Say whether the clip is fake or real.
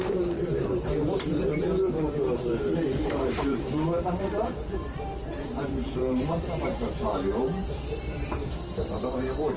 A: fake